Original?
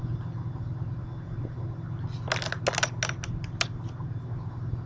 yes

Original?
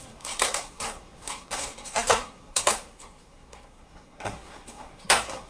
no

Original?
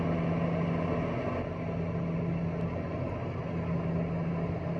yes